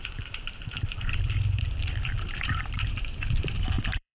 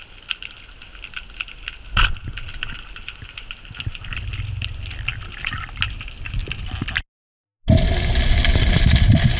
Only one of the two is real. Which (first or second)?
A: second